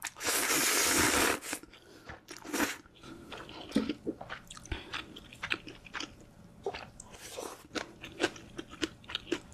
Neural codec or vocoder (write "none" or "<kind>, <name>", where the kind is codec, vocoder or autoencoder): vocoder, BigVGAN v2